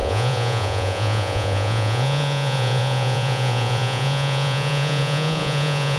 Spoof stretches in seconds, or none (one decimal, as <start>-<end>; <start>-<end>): 0.0-6.0